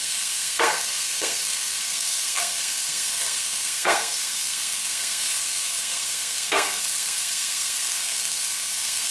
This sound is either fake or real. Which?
fake